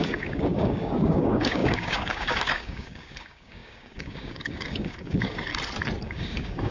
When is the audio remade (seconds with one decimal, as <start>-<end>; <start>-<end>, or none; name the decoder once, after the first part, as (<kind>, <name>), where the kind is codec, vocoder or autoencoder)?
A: 0.0-5.5 (codec, DAC); 6.0-6.7